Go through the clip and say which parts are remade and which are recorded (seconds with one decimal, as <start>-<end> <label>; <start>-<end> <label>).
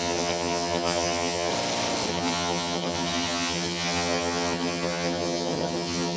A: 0.0-1.5 remade; 1.5-2.1 recorded; 2.1-6.2 remade